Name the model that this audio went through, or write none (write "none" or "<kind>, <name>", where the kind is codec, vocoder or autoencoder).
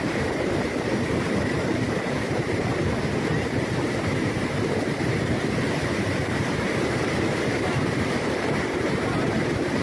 vocoder, BigVGAN v2